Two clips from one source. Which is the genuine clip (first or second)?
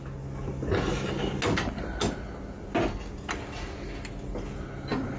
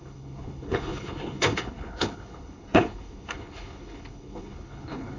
first